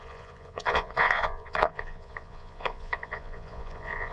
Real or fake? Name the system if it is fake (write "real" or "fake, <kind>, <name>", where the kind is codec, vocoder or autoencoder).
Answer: fake, vocoder, Vocos